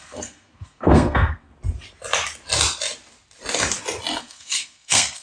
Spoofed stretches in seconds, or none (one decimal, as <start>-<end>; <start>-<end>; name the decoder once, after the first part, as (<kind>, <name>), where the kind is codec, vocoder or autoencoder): 0.0-1.5 (codec, SNAC); 4.2-5.2